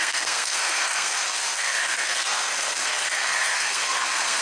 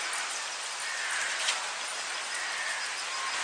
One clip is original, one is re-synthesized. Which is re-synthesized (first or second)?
first